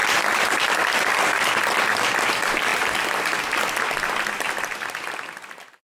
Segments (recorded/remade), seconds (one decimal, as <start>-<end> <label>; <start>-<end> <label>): 0.0-0.5 remade; 0.5-5.9 recorded